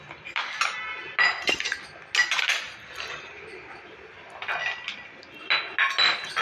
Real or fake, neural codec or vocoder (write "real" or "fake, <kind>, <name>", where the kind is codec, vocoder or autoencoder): real